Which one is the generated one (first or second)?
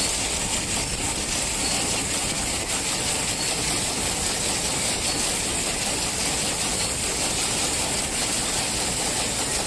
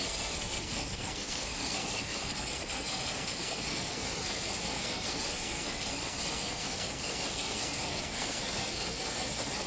second